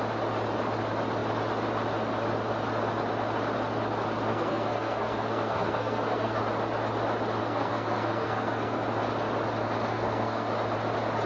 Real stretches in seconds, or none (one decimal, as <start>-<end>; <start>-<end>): 0.0-4.3; 6.4-7.4; 8.8-9.9; 10.5-11.3